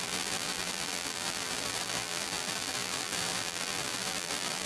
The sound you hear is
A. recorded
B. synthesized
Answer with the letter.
B